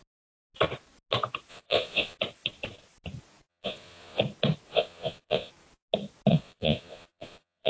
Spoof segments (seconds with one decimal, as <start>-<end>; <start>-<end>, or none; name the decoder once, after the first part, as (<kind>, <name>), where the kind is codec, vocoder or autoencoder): 1.5-2.2 (vocoder, Vocos); 3.5-4.2; 4.7-5.5; 6.3-7.7